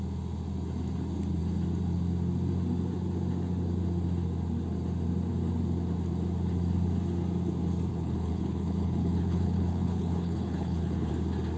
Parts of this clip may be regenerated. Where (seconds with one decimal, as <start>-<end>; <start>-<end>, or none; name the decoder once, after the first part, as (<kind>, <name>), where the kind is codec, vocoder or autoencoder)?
7.9-11.1 (codec, HILCodec)